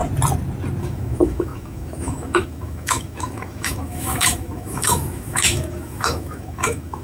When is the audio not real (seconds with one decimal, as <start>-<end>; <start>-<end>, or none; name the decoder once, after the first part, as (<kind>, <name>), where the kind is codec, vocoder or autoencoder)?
0.8-7.0 (autoencoder, DAC-VAE)